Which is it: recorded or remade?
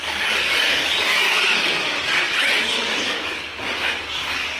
remade